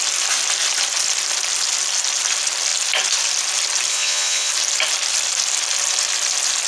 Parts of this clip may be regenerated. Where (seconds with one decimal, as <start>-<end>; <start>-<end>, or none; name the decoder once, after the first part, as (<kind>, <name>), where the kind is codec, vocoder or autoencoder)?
3.9-4.5 (vocoder, Vocos)